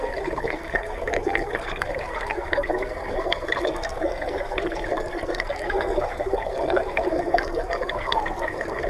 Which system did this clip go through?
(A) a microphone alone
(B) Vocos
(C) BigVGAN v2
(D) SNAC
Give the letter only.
D